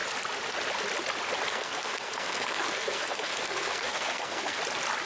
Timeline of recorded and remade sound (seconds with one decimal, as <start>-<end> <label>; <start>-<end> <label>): 0.0-1.5 recorded; 1.5-4.6 remade; 4.6-5.1 recorded

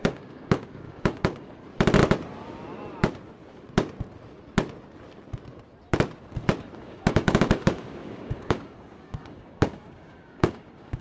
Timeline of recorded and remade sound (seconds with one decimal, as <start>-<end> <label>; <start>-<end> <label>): 0.0-1.6 remade; 1.6-6.8 recorded; 6.8-11.0 remade